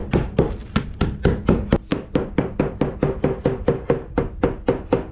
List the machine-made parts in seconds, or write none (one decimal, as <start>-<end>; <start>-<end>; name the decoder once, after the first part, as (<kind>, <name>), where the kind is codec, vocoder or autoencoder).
0.0-0.9 (vocoder, BigVGAN v2)